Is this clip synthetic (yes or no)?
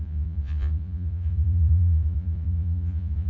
yes